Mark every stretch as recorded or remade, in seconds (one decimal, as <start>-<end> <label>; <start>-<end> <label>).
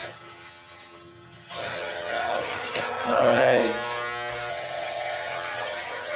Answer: 0.0-3.6 remade; 3.6-4.5 recorded; 4.5-6.2 remade